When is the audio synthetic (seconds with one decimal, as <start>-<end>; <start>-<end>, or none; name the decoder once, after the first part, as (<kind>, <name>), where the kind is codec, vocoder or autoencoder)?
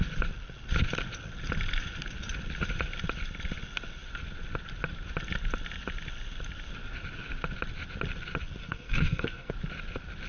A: 8.6-9.5 (codec, SNAC)